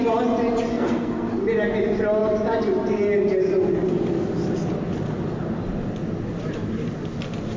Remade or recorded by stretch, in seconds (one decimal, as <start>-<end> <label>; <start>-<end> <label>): 0.0-0.7 recorded; 0.7-1.3 remade; 1.3-7.6 recorded